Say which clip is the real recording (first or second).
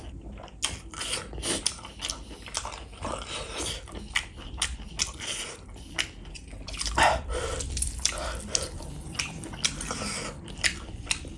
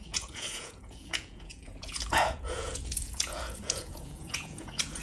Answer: first